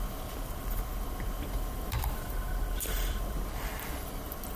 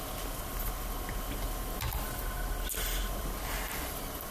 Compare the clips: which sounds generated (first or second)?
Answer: first